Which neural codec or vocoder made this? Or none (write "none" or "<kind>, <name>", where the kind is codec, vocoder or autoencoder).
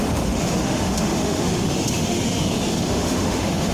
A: autoencoder, DAC-VAE